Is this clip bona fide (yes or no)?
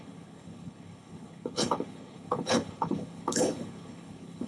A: no